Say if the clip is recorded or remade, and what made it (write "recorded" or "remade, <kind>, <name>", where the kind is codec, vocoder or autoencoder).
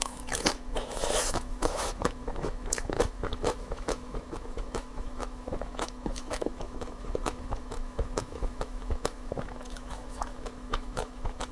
remade, autoencoder, DAC-VAE